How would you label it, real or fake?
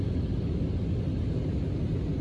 real